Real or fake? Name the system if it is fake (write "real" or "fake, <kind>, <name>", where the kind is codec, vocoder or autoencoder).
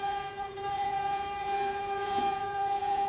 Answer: fake, vocoder, Vocos